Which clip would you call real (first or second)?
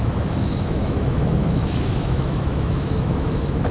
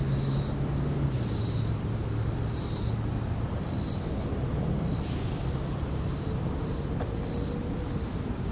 second